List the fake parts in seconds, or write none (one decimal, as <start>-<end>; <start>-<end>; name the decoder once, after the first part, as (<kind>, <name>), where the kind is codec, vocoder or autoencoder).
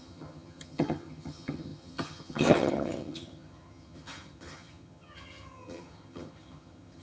0.0-7.0 (vocoder, HiFi-GAN)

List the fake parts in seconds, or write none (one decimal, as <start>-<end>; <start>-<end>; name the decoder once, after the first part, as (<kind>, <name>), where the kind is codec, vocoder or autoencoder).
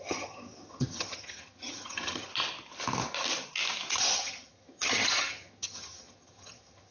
0.0-2.3 (vocoder, HiFi-GAN); 4.0-6.9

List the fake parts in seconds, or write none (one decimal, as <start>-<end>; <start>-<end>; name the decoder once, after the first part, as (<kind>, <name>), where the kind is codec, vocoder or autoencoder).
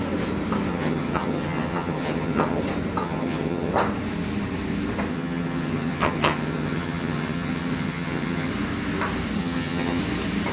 0.7-2.6 (vocoder, HiFi-GAN); 3.0-3.7; 5.1-8.5; 9.4-10.0